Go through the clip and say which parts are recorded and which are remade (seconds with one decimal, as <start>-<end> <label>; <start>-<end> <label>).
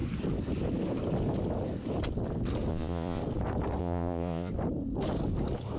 0.0-2.7 recorded; 2.7-3.2 remade; 3.2-3.8 recorded; 3.8-4.5 remade; 4.5-5.8 recorded